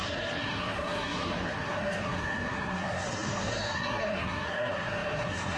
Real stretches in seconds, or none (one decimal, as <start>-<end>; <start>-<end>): none